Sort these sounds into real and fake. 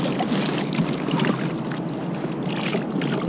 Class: real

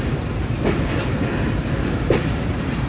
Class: fake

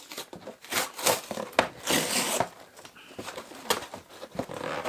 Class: real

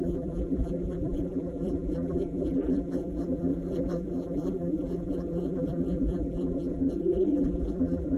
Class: fake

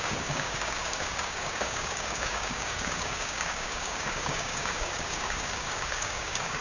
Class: fake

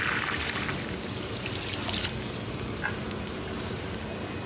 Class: real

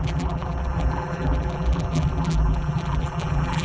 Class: fake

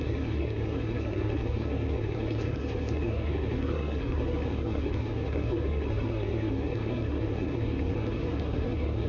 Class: fake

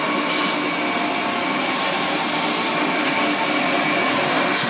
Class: real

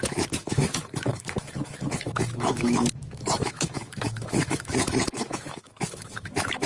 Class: fake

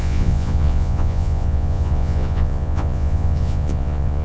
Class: fake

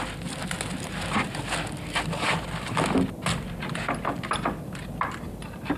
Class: real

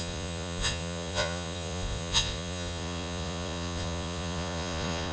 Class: fake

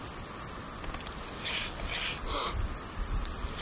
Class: real